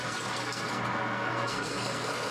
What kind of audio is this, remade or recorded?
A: remade